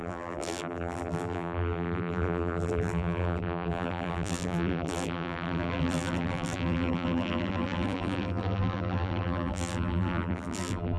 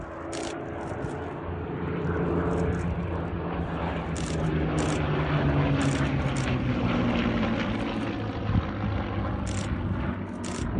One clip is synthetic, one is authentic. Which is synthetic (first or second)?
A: first